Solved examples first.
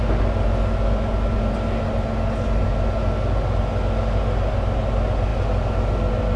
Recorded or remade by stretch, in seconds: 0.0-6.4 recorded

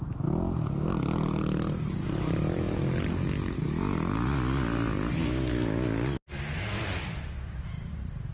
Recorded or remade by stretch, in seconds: 0.0-8.3 recorded

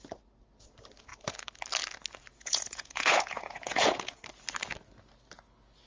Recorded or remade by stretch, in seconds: 0.0-2.3 recorded; 2.3-4.2 remade; 4.2-5.9 recorded

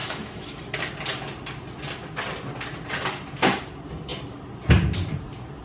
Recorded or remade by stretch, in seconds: 0.0-0.6 remade; 0.6-5.6 recorded

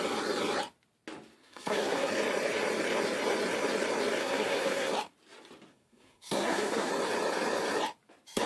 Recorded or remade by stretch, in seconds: 0.0-1.4 recorded; 1.4-2.1 remade; 2.1-4.2 recorded; 4.2-4.9 remade; 4.9-5.7 recorded; 5.7-6.9 remade; 6.9-8.5 recorded

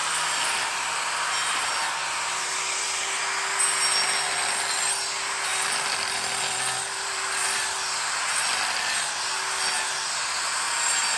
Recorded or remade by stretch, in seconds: 0.0-0.7 remade; 0.7-5.5 recorded; 5.5-8.2 remade; 8.2-11.2 recorded

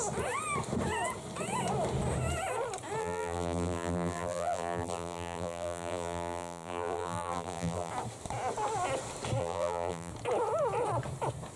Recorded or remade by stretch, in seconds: 0.0-3.0 recorded; 3.0-7.9 remade; 7.9-9.4 recorded; 9.4-10.1 remade; 10.1-11.6 recorded